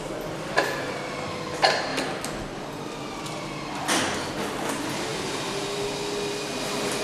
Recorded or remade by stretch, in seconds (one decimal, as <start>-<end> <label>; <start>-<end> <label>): 0.0-1.9 recorded; 1.9-4.0 remade; 4.0-7.0 recorded